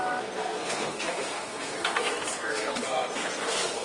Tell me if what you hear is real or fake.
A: fake